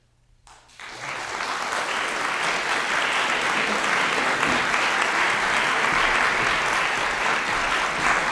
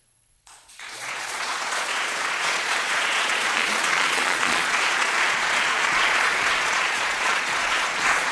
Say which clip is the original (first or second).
first